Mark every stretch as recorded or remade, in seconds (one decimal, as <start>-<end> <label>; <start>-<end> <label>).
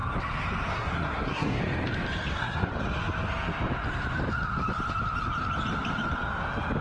0.0-0.7 recorded; 0.7-1.6 remade; 1.6-2.3 recorded; 2.3-2.7 remade; 2.7-6.8 recorded